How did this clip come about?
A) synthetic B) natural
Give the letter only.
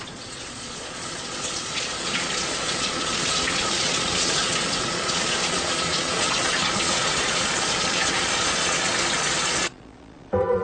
A